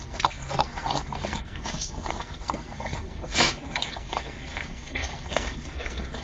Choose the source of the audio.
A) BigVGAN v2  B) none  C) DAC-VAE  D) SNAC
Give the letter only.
D